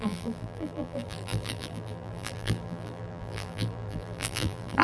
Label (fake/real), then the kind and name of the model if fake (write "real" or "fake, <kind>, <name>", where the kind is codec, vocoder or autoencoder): fake, vocoder, BigVGAN v2